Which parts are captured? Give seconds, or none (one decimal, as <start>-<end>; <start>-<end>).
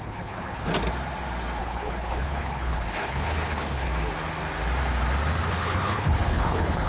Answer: 0.7-1.6; 3.9-5.5